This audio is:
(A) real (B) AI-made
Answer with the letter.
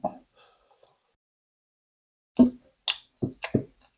A